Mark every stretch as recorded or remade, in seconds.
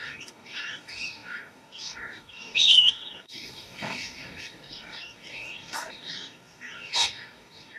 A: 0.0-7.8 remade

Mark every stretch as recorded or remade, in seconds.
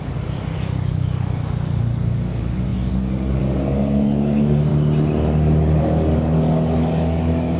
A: 0.0-4.7 remade; 4.7-5.8 recorded; 5.8-7.6 remade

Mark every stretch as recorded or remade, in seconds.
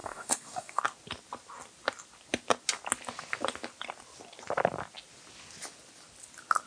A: 0.0-0.8 remade; 0.8-6.7 recorded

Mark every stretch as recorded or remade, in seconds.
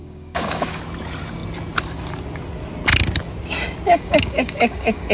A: 0.0-0.8 remade; 0.8-3.9 recorded; 3.9-5.1 remade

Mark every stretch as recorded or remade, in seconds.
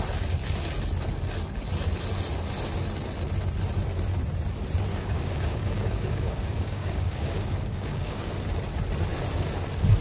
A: 0.0-4.9 recorded; 4.9-8.3 remade; 8.3-10.0 recorded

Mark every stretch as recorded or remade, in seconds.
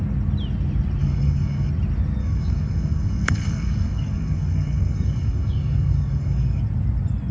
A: 0.0-1.0 recorded; 1.0-1.7 remade; 1.7-2.2 recorded; 2.2-6.6 remade; 6.6-7.3 recorded